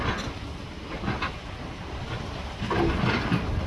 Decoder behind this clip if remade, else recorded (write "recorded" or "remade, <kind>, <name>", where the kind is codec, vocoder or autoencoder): recorded